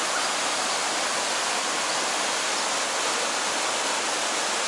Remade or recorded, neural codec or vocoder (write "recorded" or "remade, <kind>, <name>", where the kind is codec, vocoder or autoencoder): recorded